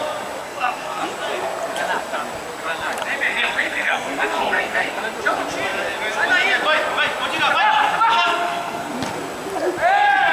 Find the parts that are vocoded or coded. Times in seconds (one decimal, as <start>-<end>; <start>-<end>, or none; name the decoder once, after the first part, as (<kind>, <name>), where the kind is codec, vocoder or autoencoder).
0.4-1.0 (codec, SNAC); 3.3-5.0; 8.1-8.9